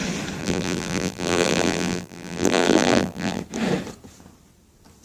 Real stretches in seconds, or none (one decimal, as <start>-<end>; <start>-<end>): 0.0-0.4; 3.4-5.0